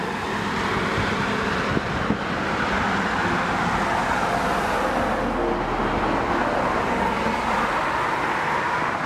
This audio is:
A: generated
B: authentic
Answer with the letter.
B